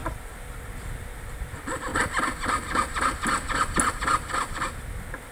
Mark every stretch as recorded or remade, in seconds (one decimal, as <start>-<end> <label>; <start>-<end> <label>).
0.0-5.3 recorded